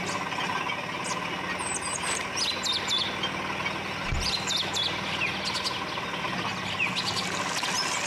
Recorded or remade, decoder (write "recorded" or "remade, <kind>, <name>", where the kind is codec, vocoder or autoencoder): recorded